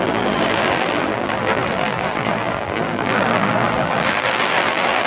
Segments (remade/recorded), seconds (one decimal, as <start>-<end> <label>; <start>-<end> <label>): 0.0-5.1 remade